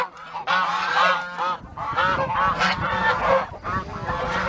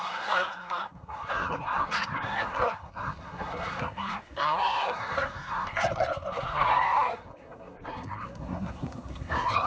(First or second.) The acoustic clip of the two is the first